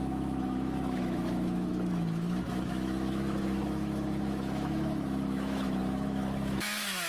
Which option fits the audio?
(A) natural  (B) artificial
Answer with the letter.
B